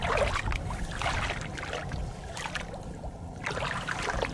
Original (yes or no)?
yes